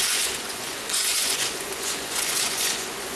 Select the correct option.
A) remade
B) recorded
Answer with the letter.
A